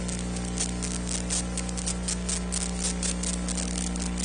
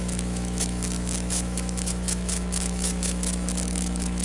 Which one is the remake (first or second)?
second